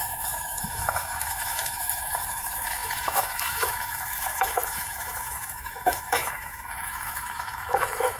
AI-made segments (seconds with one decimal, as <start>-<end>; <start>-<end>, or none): 0.0-8.2

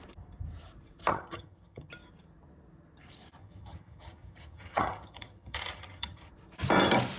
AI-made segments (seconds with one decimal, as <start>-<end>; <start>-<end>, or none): 1.1-1.9; 3.4-6.3

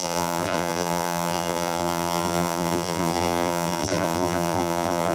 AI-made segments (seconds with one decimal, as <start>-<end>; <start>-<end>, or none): 0.0-5.1

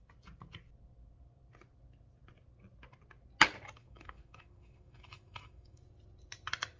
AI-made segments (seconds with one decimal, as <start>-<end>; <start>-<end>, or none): 3.8-5.8

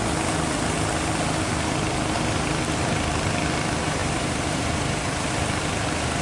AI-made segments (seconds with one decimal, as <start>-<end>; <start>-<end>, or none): 4.0-5.3

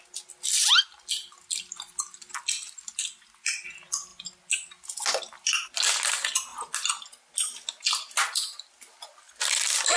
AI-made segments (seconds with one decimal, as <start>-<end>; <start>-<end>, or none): none

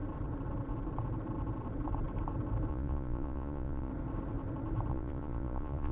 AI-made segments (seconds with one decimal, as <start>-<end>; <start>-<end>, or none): 2.7-3.9; 4.9-5.9

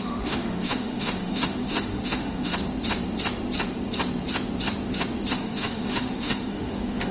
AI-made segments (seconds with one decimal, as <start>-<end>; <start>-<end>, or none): 0.0-2.5; 5.3-7.1